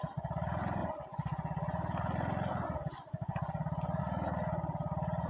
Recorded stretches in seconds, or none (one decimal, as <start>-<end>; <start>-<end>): 0.0-5.3